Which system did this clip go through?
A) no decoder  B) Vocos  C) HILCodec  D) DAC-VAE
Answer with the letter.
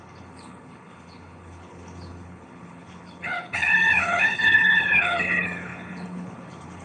C